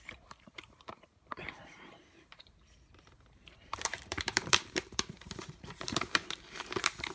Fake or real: fake